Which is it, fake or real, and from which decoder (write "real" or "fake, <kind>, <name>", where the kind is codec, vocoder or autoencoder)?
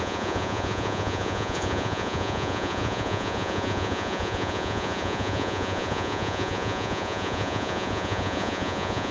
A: fake, vocoder, Vocos